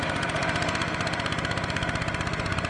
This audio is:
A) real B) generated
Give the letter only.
B